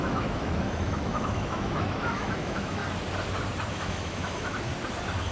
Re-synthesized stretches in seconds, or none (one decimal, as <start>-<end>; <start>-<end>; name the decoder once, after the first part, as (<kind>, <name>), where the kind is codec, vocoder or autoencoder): 0.0-2.8 (autoencoder, DAC-VAE); 3.7-4.7